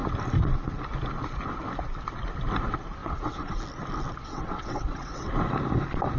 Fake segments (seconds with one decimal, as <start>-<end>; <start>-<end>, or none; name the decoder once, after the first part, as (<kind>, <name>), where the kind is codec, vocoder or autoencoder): 3.0-3.6 (vocoder, WaveNeXt); 4.2-5.3